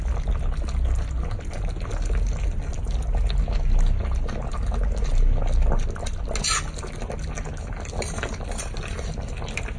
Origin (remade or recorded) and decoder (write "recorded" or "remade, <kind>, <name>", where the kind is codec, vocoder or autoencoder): recorded